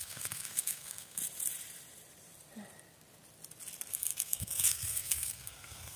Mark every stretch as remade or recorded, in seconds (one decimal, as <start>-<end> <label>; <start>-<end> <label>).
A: 0.0-1.2 remade; 1.2-3.9 recorded; 3.9-6.0 remade